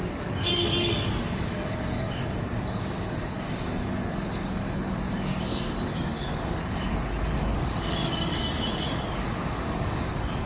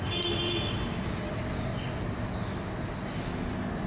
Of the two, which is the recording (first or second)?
second